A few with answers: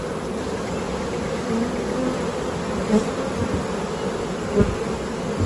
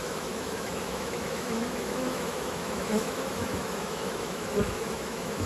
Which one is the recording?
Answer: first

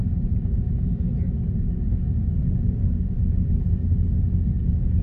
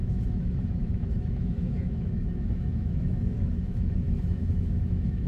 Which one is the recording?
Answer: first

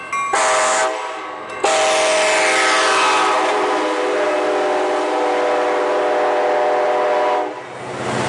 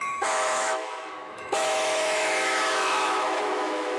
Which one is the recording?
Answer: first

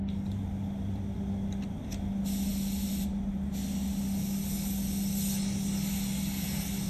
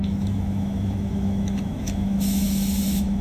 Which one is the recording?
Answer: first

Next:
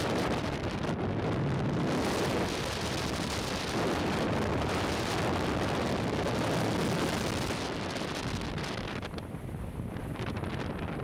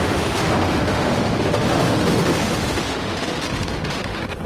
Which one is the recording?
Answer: first